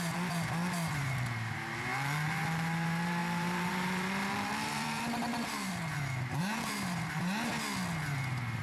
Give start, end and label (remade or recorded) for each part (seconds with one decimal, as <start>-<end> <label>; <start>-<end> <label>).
0.0-5.8 remade; 5.8-6.4 recorded; 6.4-7.5 remade; 7.5-8.6 recorded